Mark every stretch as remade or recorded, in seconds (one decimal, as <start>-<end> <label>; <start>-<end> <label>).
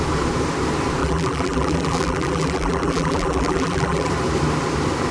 0.0-1.0 recorded; 1.0-4.1 remade; 4.1-5.1 recorded